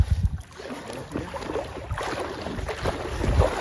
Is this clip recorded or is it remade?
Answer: recorded